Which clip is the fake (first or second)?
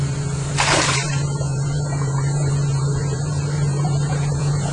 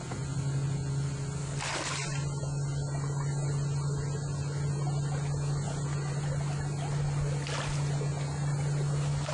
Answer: first